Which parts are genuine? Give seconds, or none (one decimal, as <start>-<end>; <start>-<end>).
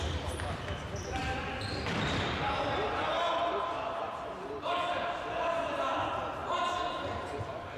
0.0-7.8